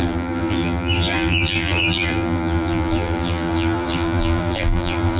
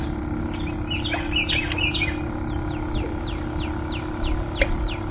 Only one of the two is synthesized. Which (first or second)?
first